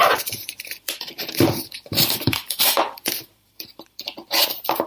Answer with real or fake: fake